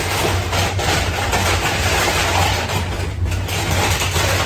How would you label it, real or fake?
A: real